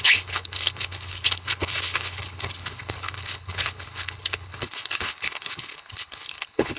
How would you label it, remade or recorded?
remade